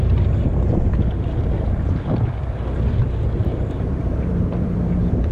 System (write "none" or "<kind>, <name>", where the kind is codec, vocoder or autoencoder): vocoder, BigVGAN v2